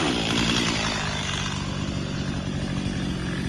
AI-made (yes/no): no